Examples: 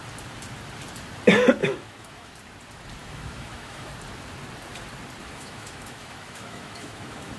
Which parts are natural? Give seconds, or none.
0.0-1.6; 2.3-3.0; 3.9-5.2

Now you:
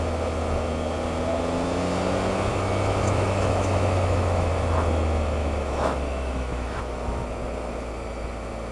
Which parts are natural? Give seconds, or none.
0.0-2.5; 4.5-5.4; 6.8-8.7

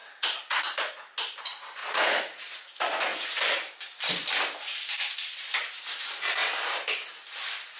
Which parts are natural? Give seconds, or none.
0.6-1.8; 2.7-7.8

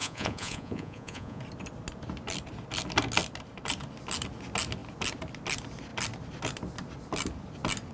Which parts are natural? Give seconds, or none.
1.4-7.9

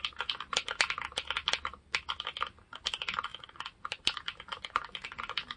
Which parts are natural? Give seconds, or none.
0.0-5.6